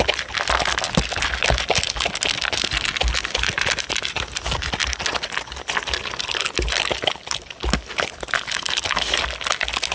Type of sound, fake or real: real